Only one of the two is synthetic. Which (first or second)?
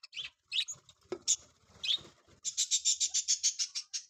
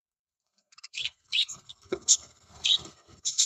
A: second